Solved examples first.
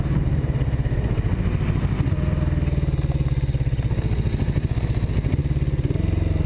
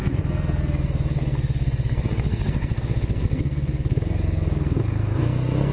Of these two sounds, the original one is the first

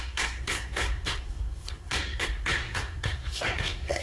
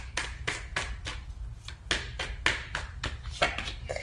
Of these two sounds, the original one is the second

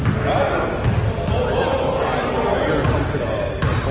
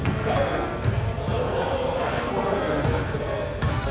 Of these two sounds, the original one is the first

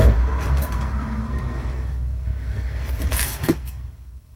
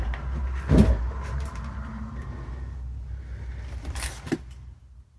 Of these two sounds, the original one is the second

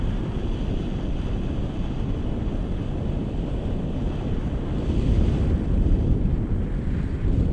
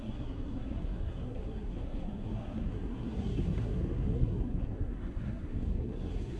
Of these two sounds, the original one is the first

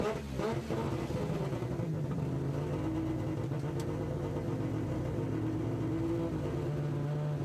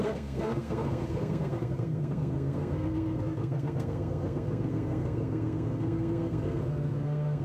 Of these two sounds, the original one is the first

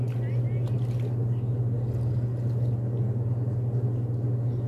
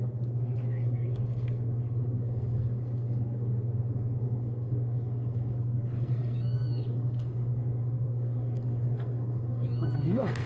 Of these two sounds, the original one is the first